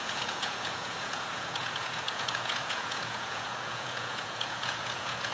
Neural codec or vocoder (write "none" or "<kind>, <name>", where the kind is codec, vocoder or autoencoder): vocoder, Vocos